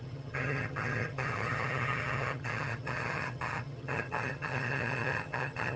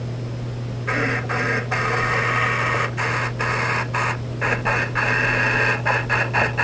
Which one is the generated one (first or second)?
first